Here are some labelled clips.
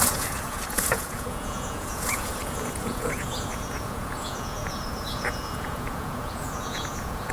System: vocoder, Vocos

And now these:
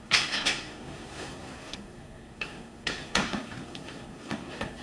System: codec, SNAC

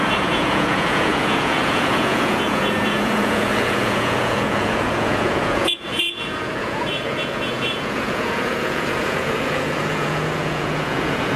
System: vocoder, Vocos